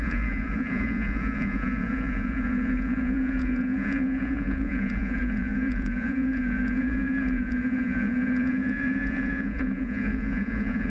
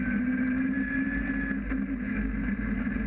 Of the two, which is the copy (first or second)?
first